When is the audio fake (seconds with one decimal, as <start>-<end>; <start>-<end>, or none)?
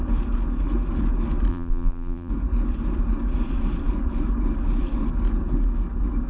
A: 1.5-2.3